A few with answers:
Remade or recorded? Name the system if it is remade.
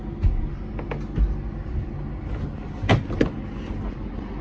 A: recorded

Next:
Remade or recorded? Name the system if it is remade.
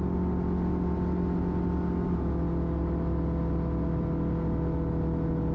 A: recorded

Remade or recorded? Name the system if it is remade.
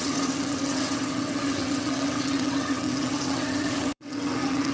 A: remade, vocoder, WaveNeXt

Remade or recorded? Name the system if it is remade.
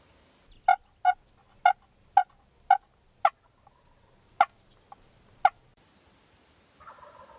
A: recorded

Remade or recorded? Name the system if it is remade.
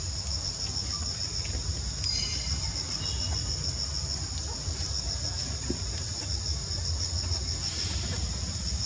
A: recorded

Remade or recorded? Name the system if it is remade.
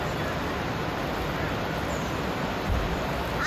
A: recorded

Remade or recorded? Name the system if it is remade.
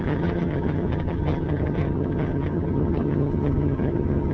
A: remade, vocoder, HiFi-GAN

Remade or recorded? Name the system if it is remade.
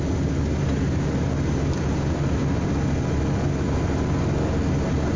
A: recorded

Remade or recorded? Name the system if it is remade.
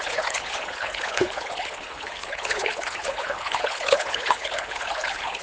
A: remade, codec, HILCodec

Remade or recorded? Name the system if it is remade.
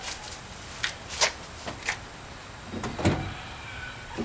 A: recorded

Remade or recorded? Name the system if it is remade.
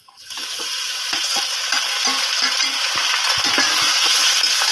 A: recorded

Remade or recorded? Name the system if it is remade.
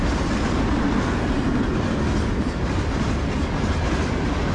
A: recorded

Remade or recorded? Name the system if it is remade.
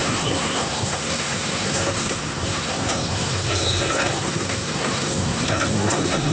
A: remade, codec, SNAC